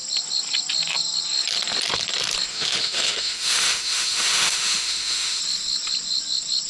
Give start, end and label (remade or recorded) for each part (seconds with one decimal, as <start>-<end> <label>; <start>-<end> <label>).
0.0-2.5 recorded; 2.5-5.4 remade; 5.4-6.7 recorded